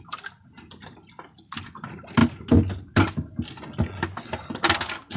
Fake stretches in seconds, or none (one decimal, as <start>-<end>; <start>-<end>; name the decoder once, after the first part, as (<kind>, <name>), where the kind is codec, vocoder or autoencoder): none